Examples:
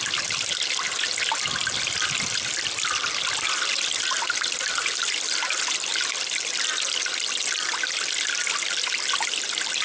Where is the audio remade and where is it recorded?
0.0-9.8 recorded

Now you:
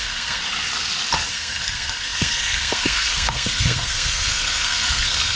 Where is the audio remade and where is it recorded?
0.0-0.4 remade; 0.4-1.3 recorded; 1.3-5.4 remade

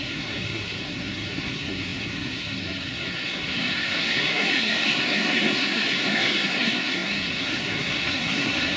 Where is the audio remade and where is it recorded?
0.0-8.8 remade

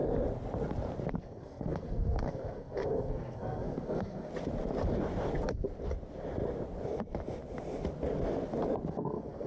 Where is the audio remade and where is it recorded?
0.0-1.2 recorded; 1.2-4.3 remade; 4.3-8.9 recorded; 8.9-9.5 remade

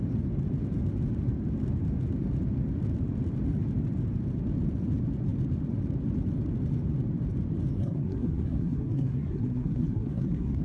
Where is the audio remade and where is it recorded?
0.0-7.8 recorded; 7.8-10.6 remade

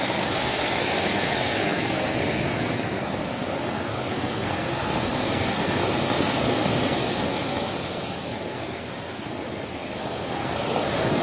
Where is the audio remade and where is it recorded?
0.0-11.2 remade

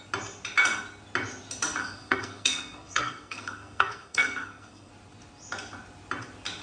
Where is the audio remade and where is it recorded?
0.0-1.8 recorded; 1.8-4.9 remade; 4.9-6.6 recorded